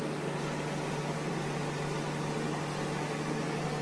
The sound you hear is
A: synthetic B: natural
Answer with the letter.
B